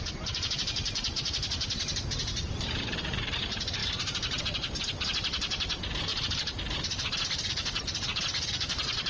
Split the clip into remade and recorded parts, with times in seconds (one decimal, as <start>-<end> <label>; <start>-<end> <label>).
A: 0.0-9.1 remade